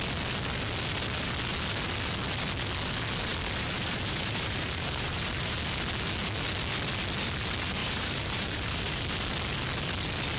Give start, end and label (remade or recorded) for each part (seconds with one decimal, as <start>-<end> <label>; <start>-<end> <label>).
0.0-3.3 recorded; 3.3-5.6 remade; 5.6-7.8 recorded; 7.8-9.0 remade; 9.0-10.4 recorded